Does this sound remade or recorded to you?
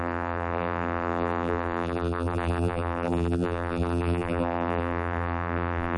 remade